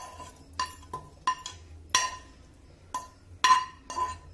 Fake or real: real